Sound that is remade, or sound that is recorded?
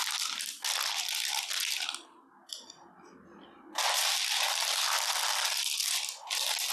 recorded